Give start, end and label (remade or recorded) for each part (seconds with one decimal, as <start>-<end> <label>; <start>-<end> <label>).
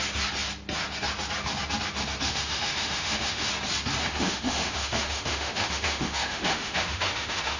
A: 0.0-2.3 recorded; 2.3-3.5 remade; 3.5-4.0 recorded; 4.0-7.6 remade